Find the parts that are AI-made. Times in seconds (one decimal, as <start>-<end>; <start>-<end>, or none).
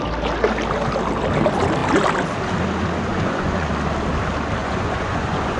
3.1-3.7; 4.6-5.6